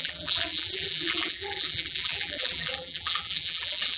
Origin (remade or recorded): remade